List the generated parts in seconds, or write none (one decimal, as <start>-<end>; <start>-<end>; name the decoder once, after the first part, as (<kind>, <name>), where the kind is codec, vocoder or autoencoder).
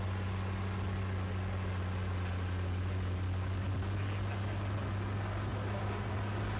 5.5-6.1 (vocoder, BigVGAN v2)